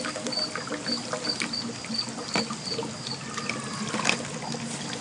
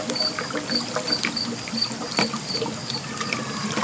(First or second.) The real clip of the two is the first